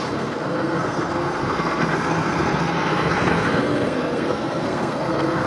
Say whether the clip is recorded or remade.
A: remade